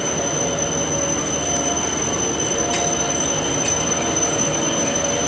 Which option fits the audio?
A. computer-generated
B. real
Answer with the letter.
B